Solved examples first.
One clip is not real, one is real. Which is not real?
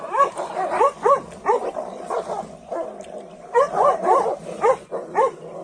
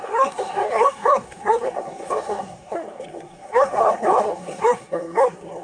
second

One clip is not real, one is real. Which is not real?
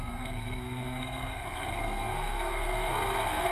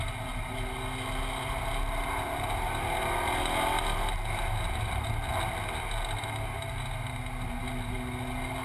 first